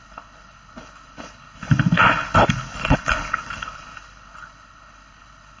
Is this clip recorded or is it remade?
remade